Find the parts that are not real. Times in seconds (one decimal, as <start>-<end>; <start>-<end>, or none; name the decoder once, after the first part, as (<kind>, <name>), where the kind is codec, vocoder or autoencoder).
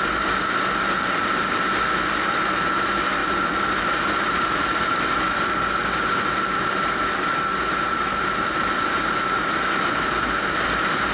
3.2-5.5 (vocoder, BigVGAN v2); 8.1-8.7